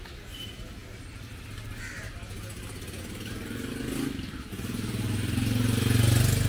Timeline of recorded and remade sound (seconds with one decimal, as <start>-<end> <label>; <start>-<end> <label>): 0.0-6.5 recorded